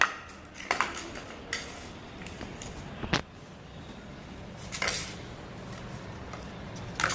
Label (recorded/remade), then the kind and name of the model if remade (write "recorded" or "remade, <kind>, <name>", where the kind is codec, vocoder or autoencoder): recorded